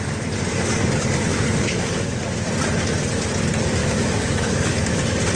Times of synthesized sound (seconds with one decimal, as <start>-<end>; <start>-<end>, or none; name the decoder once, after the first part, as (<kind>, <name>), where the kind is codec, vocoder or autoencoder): 0.5-2.5 (codec, DAC); 3.8-4.7